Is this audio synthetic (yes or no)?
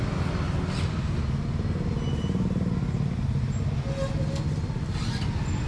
no